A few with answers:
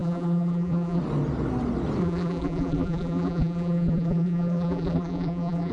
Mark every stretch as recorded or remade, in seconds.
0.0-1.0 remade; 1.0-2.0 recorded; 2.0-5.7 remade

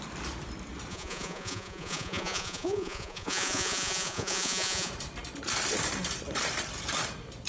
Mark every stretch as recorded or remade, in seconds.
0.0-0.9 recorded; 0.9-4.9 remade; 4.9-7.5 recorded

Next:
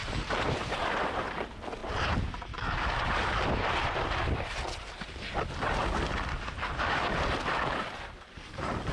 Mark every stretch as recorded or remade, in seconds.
0.0-0.8 remade; 0.8-1.8 recorded; 1.8-2.4 remade; 2.4-8.9 recorded